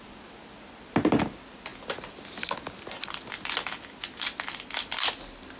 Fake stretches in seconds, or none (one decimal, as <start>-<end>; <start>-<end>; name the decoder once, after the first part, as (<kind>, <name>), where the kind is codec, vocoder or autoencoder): none